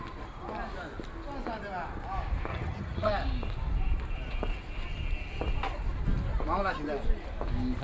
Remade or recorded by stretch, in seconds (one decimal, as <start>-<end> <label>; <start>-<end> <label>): 0.0-2.5 recorded; 2.5-3.1 remade; 3.1-7.8 recorded